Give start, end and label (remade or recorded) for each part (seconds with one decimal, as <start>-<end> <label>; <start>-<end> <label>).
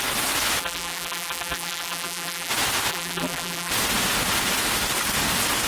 0.0-0.6 recorded; 0.6-2.5 remade; 2.5-2.9 recorded; 2.9-3.7 remade; 3.7-5.7 recorded